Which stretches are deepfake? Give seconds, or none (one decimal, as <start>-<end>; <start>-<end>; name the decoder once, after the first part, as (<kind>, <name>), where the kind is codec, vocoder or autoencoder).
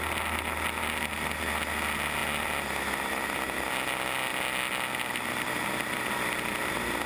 none